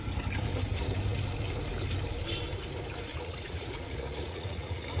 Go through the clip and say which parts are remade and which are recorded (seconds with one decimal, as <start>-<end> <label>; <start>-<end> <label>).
0.0-3.1 recorded; 3.1-5.0 remade